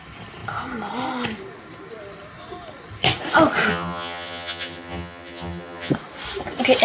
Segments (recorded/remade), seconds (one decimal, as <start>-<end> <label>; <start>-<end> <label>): 0.0-3.7 recorded; 3.7-5.9 remade; 5.9-6.8 recorded